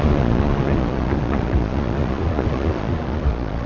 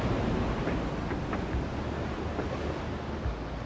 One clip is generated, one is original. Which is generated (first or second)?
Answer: first